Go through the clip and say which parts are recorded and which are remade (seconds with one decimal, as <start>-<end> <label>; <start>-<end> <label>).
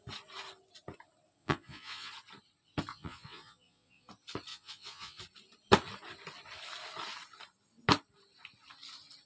0.0-1.4 recorded; 1.4-2.1 remade; 2.1-2.9 recorded; 2.9-4.1 remade; 4.1-4.5 recorded; 4.5-5.2 remade; 5.2-9.3 recorded